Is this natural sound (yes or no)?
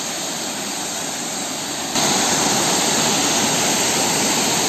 yes